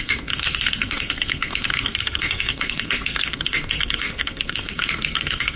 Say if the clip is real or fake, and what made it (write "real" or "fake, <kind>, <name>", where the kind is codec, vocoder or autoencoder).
fake, codec, SNAC